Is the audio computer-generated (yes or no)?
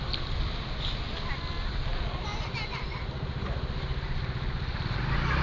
no